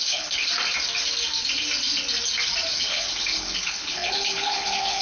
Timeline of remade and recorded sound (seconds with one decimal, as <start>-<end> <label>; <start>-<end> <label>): 0.0-0.5 remade; 0.5-2.7 recorded; 2.7-5.0 remade

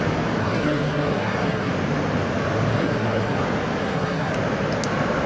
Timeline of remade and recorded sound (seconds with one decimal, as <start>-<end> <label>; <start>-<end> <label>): 0.0-0.4 recorded; 0.4-1.7 remade; 1.7-2.7 recorded; 2.7-3.4 remade; 3.4-3.8 recorded; 3.8-4.3 remade; 4.3-5.3 recorded

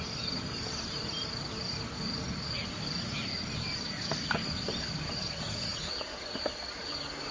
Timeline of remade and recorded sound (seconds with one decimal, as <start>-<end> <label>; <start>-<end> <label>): 0.0-7.3 recorded

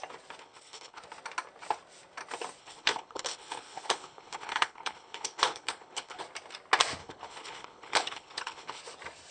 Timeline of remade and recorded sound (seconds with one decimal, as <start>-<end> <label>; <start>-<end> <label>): 0.0-0.4 recorded; 0.4-1.0 remade; 1.0-2.6 recorded; 2.6-6.2 remade; 6.2-7.0 recorded; 7.0-8.8 remade; 8.8-9.3 recorded

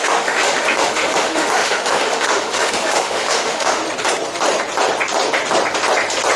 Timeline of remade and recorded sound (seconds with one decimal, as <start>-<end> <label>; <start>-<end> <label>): 0.0-3.8 remade; 3.8-6.4 recorded

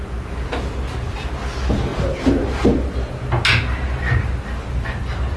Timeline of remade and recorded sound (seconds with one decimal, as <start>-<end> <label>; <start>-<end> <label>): 0.0-5.4 recorded

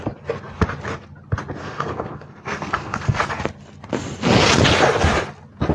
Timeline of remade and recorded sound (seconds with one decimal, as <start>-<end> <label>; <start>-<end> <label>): 0.0-1.6 recorded; 1.6-3.2 remade; 3.2-5.7 recorded